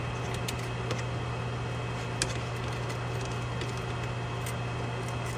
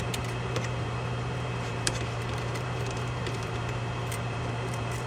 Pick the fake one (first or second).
second